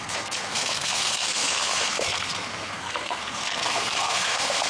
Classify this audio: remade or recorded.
remade